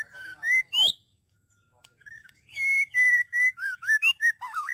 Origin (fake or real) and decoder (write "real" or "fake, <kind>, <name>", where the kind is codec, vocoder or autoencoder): fake, codec, DAC